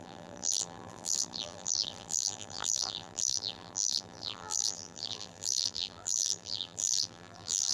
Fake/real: fake